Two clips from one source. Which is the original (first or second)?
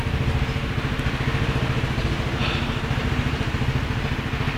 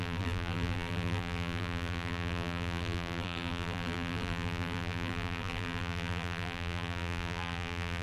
first